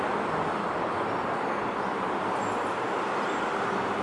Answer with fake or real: real